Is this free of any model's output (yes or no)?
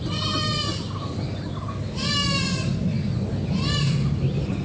yes